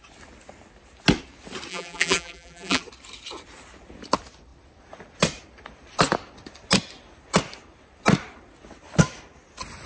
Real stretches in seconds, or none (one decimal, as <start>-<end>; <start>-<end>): 0.0-1.7; 2.8-9.9